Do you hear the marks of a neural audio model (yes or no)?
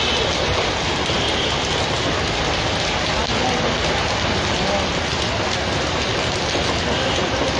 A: no